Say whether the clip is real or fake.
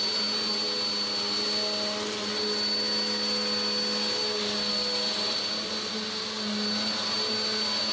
real